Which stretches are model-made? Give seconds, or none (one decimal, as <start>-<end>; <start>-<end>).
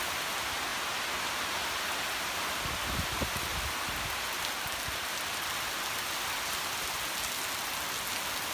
none